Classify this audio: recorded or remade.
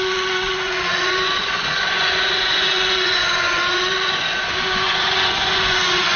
remade